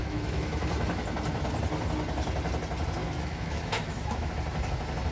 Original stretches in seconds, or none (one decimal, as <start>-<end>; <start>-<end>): 0.5-3.0; 4.3-5.1